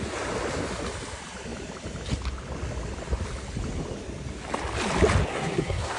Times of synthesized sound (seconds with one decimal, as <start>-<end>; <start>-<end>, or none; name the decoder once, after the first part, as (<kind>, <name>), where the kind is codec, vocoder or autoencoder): 5.3-6.0 (codec, SNAC)